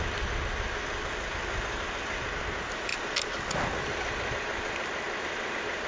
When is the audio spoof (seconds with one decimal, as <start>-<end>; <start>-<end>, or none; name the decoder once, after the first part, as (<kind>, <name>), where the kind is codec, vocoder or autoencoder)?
none